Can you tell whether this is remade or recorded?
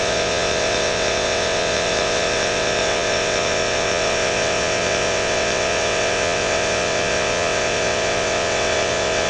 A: remade